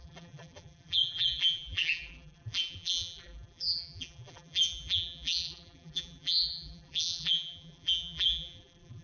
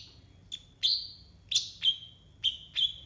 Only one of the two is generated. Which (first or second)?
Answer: first